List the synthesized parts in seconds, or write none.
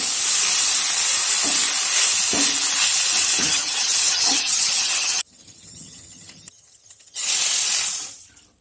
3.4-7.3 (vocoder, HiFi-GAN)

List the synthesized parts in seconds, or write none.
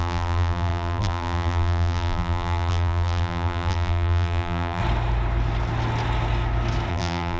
0.0-4.8 (vocoder, BigVGAN v2); 6.9-7.4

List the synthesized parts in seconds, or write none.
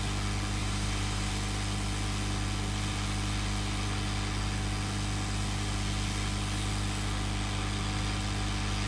0.6-1.3 (vocoder, BigVGAN v2)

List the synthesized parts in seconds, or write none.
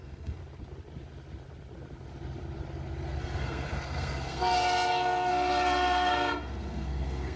0.0-0.4 (codec, SNAC); 3.2-7.4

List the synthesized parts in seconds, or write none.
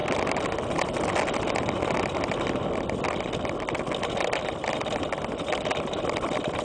0.0-4.0 (vocoder, BigVGAN v2)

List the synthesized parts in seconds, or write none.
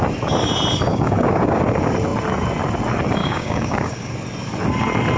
0.9-1.6 (codec, DAC); 3.2-4.1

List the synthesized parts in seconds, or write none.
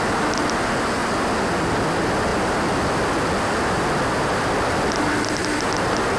none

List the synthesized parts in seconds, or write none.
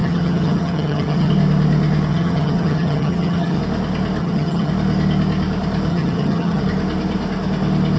0.0-1.3 (vocoder, HiFi-GAN); 2.1-3.6; 4.2-4.7; 5.9-6.6